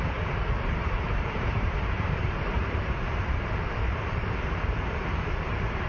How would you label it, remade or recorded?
remade